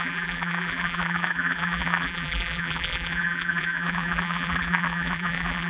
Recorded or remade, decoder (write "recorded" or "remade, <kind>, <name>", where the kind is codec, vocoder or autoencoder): remade, vocoder, BigVGAN v2